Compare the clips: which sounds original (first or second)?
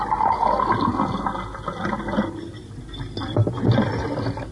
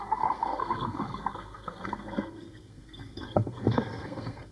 first